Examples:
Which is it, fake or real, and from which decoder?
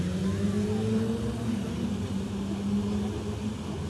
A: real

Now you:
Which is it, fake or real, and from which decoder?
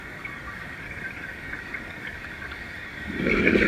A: fake, codec, DAC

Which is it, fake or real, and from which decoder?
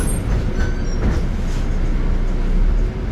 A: real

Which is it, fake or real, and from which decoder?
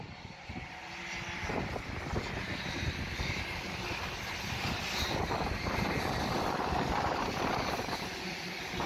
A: fake, vocoder, BigVGAN v2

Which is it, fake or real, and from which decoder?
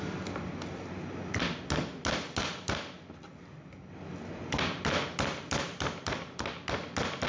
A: real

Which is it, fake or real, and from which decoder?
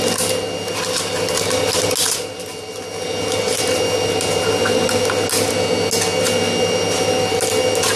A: real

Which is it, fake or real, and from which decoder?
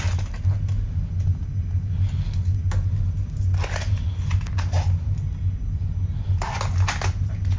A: real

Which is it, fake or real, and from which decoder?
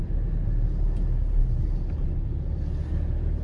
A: real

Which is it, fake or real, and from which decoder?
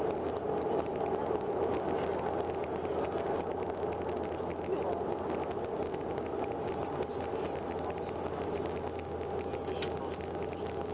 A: real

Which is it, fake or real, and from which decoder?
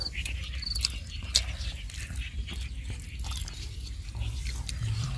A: real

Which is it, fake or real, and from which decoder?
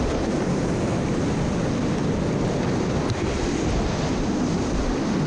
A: real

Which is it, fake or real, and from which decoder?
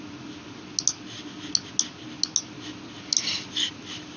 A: real